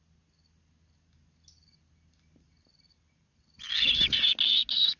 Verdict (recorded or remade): recorded